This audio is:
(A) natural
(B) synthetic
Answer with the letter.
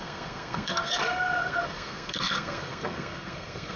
B